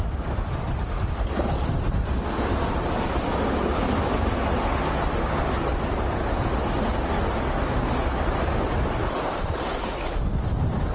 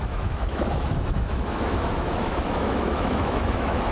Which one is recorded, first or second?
first